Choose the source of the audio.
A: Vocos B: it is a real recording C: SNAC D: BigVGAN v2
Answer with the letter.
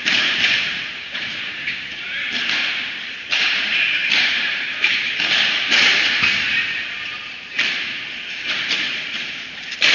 D